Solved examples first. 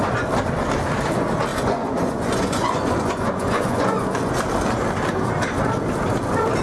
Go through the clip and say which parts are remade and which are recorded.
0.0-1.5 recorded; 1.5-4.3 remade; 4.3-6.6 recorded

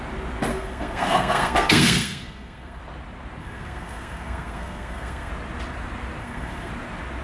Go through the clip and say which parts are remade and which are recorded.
0.0-0.5 recorded; 0.5-2.8 remade; 2.8-3.4 recorded; 3.4-5.3 remade; 5.3-6.2 recorded; 6.2-6.7 remade; 6.7-7.2 recorded

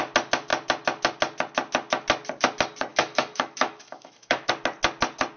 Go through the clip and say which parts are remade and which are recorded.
0.0-2.9 recorded; 2.9-4.5 remade; 4.5-5.4 recorded

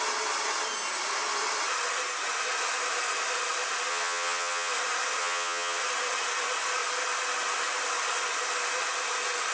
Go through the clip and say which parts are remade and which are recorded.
0.0-3.9 recorded; 3.9-4.7 remade; 4.7-5.2 recorded; 5.2-5.8 remade; 5.8-9.5 recorded

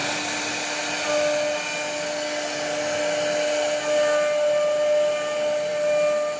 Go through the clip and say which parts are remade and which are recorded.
0.0-6.4 recorded